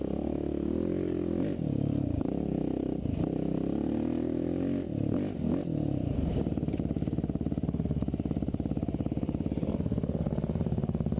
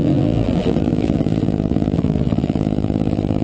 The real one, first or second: first